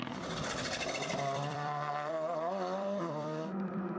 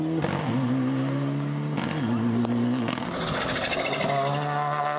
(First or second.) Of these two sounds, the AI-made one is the first